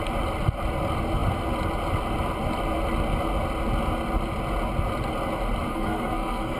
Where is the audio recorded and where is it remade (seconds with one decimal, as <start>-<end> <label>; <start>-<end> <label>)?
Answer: 0.0-5.7 recorded; 5.7-6.6 remade